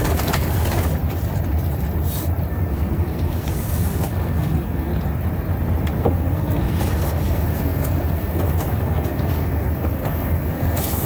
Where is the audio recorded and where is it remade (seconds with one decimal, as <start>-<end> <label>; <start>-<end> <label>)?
0.0-0.9 remade; 0.9-2.5 recorded; 2.5-4.9 remade; 4.9-5.9 recorded; 5.9-11.1 remade